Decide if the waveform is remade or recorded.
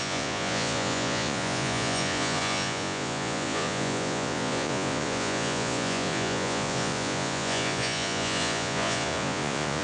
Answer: remade